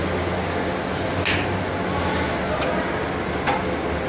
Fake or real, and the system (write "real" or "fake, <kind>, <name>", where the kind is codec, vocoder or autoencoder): real